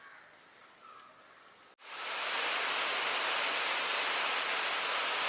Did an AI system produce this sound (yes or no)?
no